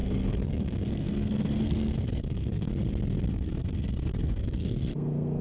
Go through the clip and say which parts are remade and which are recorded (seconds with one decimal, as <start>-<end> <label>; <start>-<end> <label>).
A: 0.0-2.7 remade; 2.7-3.3 recorded; 3.3-5.4 remade